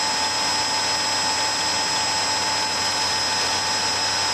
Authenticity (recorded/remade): recorded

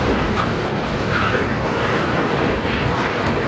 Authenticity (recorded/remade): remade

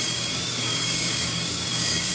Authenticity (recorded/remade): remade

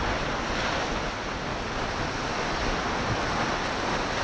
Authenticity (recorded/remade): recorded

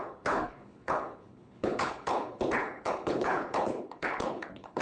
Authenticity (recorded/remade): remade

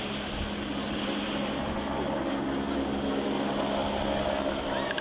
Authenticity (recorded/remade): recorded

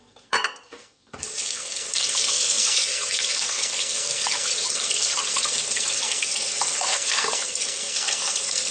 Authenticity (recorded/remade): remade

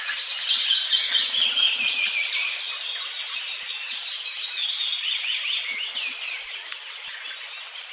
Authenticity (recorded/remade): recorded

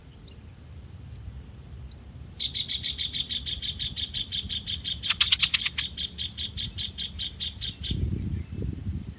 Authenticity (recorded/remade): remade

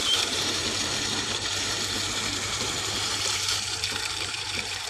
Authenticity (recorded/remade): remade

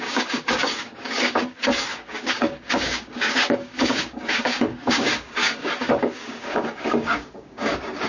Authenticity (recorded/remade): remade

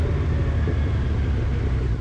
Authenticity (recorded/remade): recorded